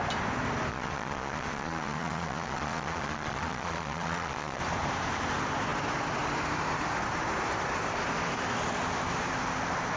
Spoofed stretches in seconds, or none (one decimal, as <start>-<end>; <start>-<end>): 0.7-4.6

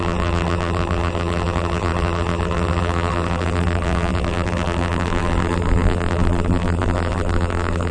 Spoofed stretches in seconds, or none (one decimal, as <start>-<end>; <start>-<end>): 0.0-7.9

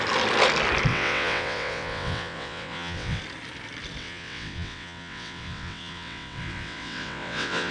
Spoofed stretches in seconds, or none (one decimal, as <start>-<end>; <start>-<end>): 0.9-3.2; 4.0-7.7

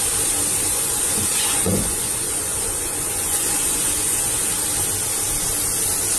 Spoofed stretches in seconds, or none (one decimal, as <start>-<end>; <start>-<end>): 0.7-4.4

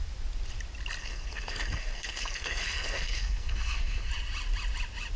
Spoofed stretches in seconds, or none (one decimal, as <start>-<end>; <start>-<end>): 1.0-4.1

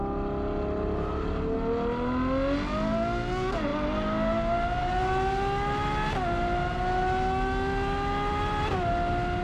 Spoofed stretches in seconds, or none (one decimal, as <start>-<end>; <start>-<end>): none

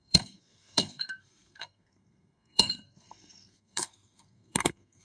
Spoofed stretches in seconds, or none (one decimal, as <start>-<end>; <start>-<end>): 0.0-5.0